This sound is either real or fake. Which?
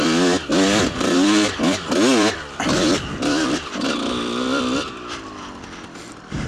fake